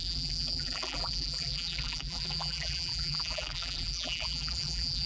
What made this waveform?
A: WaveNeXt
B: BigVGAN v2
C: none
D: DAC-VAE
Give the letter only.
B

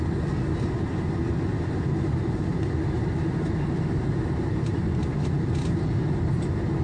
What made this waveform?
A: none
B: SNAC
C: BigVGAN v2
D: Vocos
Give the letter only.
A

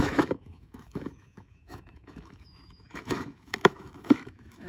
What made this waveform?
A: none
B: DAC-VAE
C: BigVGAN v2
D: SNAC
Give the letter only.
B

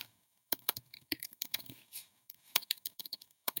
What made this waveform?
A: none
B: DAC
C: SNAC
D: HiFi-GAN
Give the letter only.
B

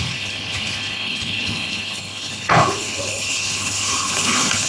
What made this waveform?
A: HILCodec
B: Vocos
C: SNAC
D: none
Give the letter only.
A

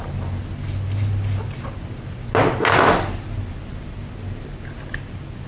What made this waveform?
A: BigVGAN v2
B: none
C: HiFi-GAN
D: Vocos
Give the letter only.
B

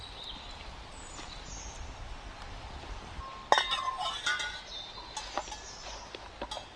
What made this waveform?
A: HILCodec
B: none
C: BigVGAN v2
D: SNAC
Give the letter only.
B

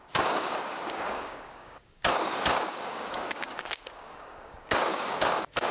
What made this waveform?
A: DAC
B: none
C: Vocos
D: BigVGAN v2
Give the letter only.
A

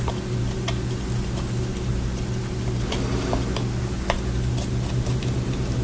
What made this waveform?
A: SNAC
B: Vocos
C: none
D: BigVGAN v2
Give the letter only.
C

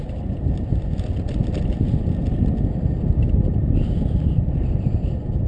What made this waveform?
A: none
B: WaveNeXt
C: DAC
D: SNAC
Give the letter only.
A